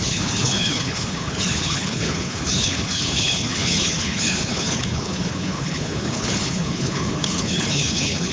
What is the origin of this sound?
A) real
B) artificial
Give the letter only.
B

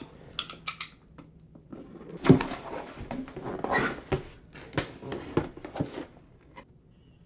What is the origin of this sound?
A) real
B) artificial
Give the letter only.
A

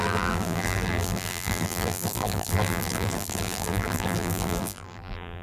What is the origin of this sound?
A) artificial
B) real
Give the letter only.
A